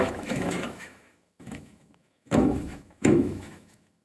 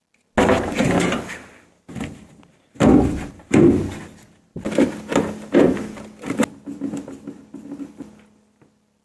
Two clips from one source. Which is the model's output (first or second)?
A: first